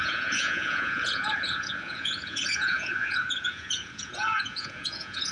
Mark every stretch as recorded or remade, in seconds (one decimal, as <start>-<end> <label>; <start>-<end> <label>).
0.0-5.3 remade